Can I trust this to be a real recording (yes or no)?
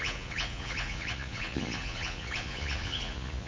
no